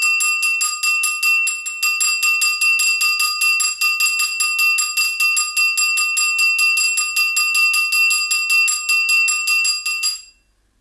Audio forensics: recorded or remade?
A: recorded